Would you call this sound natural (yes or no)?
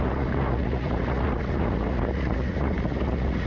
no